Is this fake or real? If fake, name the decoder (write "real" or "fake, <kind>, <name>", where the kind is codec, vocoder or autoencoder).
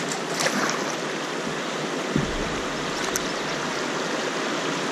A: real